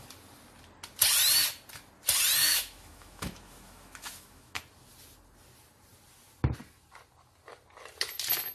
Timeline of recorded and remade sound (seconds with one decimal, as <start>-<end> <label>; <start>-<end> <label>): 0.0-2.4 recorded; 2.4-4.6 remade; 4.6-8.5 recorded